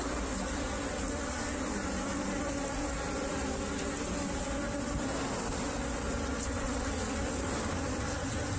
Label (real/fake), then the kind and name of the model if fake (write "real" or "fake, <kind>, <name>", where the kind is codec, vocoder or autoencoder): real